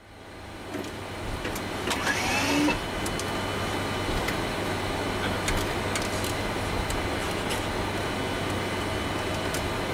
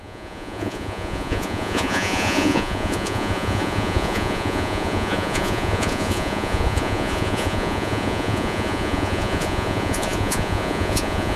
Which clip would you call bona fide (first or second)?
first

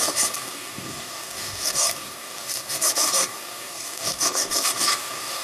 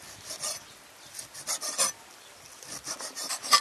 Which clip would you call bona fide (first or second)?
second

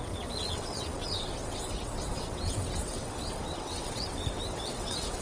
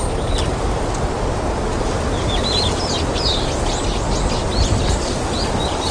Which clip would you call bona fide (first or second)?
second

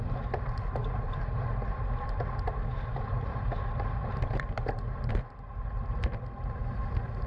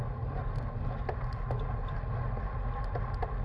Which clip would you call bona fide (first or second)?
second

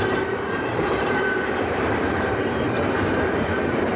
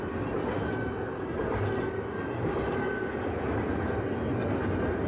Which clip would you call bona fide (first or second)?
second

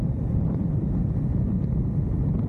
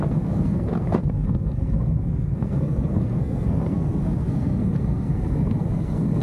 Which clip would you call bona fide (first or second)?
first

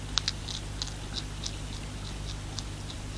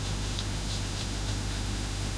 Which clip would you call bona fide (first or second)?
first